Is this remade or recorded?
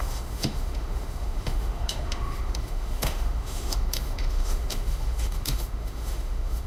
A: remade